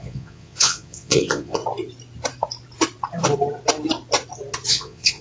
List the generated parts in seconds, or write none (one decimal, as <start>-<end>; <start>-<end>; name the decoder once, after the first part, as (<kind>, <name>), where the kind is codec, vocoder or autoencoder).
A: 0.0-1.6 (vocoder, Vocos); 4.7-5.2